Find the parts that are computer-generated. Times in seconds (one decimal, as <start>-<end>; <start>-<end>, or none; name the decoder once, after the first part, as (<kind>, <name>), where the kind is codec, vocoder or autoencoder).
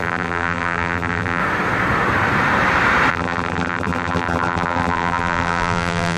0.0-1.4 (vocoder, BigVGAN v2); 3.1-6.2